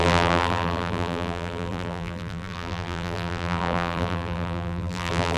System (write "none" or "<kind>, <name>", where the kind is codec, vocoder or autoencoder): vocoder, BigVGAN v2